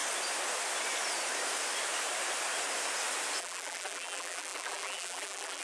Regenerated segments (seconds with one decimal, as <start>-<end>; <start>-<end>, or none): 3.4-5.6